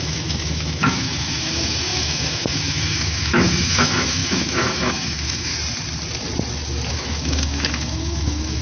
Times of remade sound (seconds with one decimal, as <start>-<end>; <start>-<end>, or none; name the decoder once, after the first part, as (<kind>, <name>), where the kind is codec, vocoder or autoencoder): 0.0-5.5 (autoencoder, DAC-VAE); 6.9-8.6